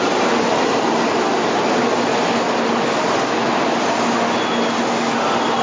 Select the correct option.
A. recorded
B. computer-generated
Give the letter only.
A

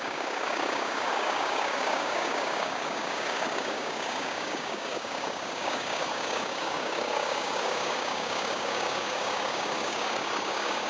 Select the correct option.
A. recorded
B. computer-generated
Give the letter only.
B